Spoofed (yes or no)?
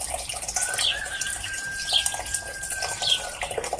no